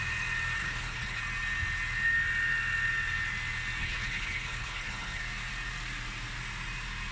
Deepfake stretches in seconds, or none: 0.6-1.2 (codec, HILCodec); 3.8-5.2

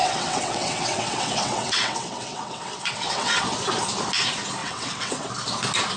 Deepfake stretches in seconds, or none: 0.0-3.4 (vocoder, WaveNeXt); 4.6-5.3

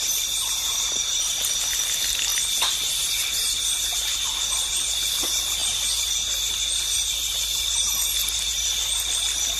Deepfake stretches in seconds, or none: none

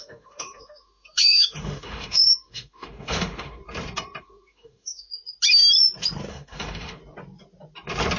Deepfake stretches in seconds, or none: 0.0-3.6 (autoencoder, DAC-VAE); 4.2-5.1; 6.3-7.0

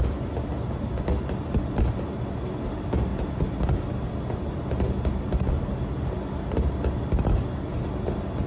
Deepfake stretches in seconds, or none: none

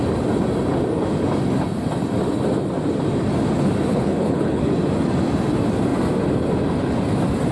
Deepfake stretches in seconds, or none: 3.9-4.7 (codec, HILCodec)

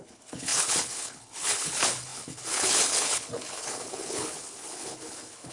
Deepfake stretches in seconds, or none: 0.0-5.5 (codec, HILCodec)